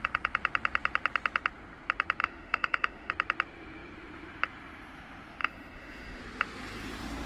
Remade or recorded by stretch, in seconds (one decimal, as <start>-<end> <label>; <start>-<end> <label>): 0.0-2.2 recorded; 2.2-3.1 remade; 3.1-5.4 recorded; 5.4-6.2 remade; 6.2-7.3 recorded